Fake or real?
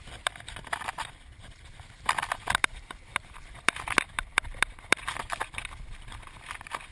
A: fake